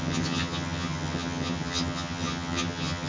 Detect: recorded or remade remade